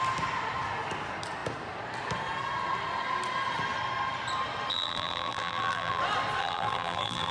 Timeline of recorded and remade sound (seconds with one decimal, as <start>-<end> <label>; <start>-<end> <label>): 0.0-4.7 recorded; 4.7-6.0 remade; 6.0-6.4 recorded; 6.4-7.3 remade

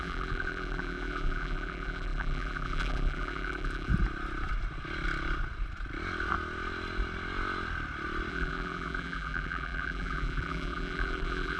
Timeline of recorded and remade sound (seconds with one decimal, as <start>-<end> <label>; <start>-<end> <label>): 0.0-3.9 remade; 3.9-8.3 recorded; 8.3-11.6 remade

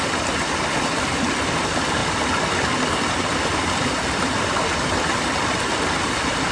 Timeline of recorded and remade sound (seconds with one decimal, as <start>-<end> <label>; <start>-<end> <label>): 0.0-2.0 recorded; 2.0-5.0 remade; 5.0-6.5 recorded

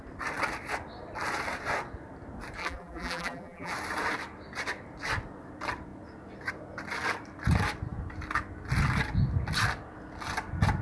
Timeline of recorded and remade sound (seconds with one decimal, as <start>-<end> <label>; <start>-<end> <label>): 0.0-2.6 recorded; 2.6-3.7 remade; 3.7-10.8 recorded

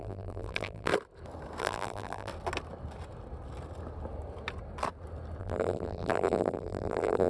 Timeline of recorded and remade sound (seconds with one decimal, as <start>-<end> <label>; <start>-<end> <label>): 0.0-0.9 remade; 0.9-1.6 recorded; 1.6-2.3 remade; 2.3-5.4 recorded; 5.4-7.3 remade

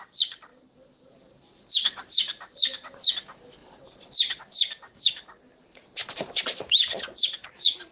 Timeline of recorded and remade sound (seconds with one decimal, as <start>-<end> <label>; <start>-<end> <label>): 0.0-0.5 recorded; 0.5-3.1 remade; 3.1-3.6 recorded; 3.6-4.4 remade; 4.4-5.4 recorded; 5.4-7.5 remade; 7.5-7.9 recorded